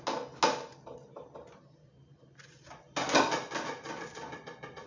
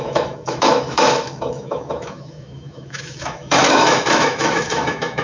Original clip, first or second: first